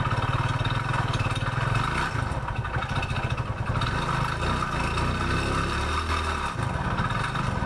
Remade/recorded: recorded